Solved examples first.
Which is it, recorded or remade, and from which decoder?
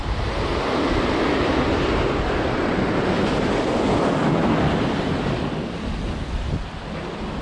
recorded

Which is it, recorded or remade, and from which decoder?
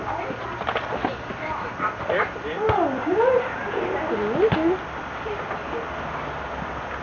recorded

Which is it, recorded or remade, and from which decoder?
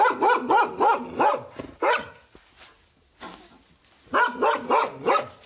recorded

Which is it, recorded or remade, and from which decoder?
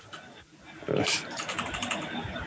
recorded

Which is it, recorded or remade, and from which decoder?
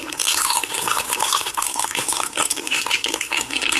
remade, codec, SNAC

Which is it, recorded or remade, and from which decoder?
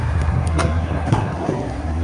remade, codec, SNAC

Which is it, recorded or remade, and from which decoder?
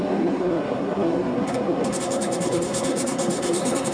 remade, codec, SNAC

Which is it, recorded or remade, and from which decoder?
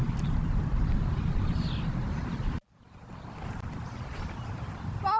recorded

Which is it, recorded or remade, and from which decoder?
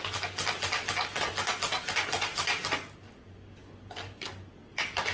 recorded